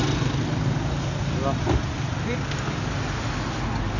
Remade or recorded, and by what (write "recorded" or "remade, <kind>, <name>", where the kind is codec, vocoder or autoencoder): recorded